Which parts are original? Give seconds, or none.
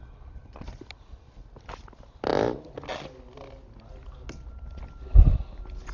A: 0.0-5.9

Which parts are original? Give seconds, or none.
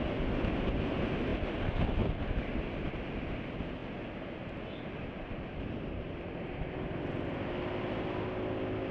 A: 0.0-8.9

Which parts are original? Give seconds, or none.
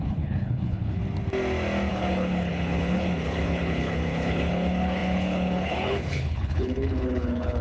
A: 1.0-1.9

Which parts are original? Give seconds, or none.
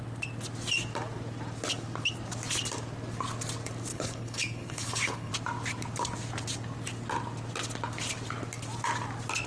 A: 0.0-3.9; 5.3-9.5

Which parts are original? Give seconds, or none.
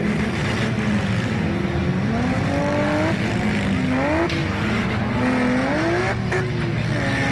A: 0.0-7.3